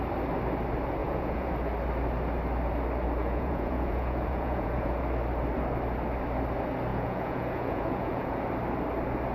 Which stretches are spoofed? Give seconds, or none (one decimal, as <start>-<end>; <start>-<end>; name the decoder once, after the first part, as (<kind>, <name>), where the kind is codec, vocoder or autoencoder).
1.0-1.5 (vocoder, Vocos); 3.2-5.0; 6.9-8.4